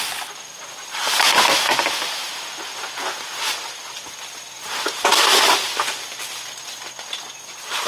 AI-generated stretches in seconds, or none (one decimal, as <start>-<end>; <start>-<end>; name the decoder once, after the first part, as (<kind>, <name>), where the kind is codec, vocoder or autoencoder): none